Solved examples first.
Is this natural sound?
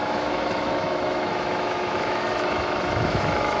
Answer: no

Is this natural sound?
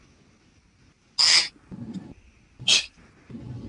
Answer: yes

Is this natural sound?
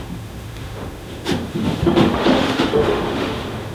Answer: no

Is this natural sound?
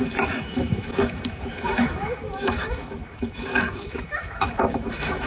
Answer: no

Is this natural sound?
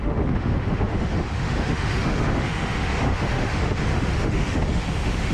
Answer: no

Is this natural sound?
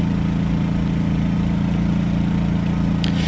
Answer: yes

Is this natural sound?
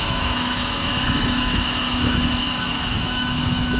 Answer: no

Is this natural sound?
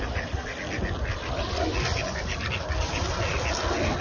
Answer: yes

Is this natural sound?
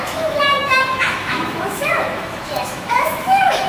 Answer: no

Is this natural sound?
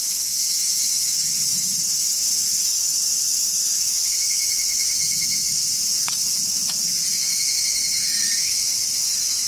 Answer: no